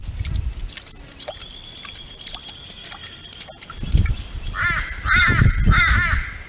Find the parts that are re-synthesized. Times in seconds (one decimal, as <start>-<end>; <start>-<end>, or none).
none